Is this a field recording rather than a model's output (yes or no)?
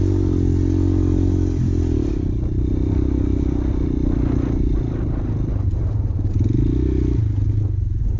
yes